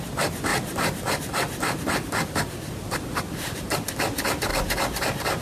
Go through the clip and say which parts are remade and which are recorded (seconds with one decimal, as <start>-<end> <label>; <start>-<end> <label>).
0.0-0.5 recorded; 0.5-3.7 remade; 3.7-4.5 recorded; 4.5-5.4 remade